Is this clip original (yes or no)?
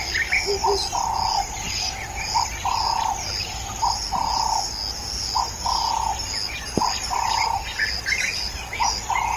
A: yes